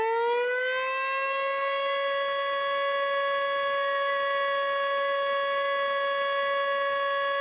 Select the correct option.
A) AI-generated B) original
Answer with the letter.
B